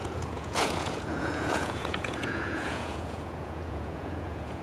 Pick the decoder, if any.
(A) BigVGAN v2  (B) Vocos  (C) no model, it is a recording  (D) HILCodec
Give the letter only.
B